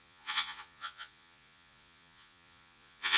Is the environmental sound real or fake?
fake